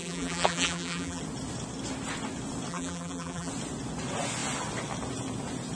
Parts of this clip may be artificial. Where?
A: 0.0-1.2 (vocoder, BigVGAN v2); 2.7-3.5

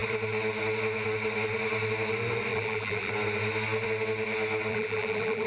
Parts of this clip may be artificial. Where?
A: 2.5-3.1 (vocoder, BigVGAN v2); 4.7-5.5